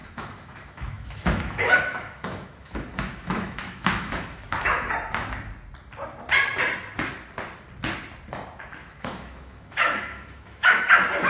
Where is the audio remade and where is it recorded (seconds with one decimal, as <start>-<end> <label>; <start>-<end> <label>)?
0.0-4.9 remade; 4.9-8.8 recorded; 8.8-10.8 remade; 10.8-11.3 recorded